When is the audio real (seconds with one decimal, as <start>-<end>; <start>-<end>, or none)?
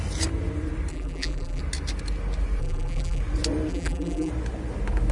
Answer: 0.0-0.9; 1.6-2.6; 3.2-3.7; 4.3-5.1